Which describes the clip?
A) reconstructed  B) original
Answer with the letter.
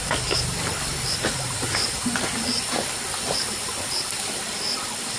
B